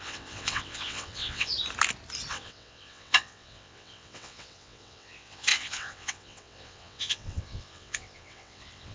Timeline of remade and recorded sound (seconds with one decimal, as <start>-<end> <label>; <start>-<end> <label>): 0.0-1.5 remade; 1.5-2.3 recorded; 2.3-8.9 remade